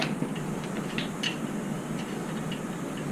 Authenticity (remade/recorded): recorded